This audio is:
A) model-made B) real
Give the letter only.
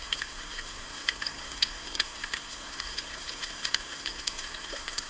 A